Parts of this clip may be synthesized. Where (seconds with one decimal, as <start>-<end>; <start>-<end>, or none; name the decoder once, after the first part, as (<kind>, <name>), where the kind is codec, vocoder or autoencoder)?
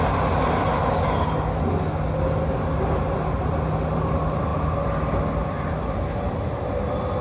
none